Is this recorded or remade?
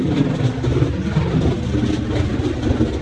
recorded